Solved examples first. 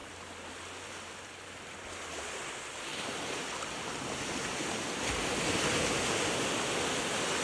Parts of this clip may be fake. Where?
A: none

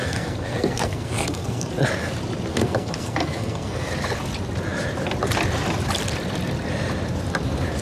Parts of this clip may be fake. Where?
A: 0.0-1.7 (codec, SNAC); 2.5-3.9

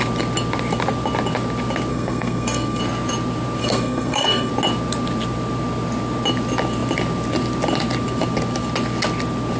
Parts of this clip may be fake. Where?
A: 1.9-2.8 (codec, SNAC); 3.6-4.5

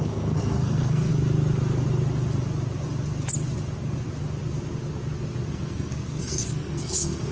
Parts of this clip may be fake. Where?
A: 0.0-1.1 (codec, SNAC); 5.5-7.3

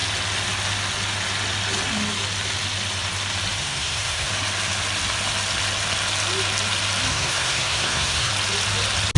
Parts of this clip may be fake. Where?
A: 3.6-4.3 (codec, SNAC); 7.1-8.3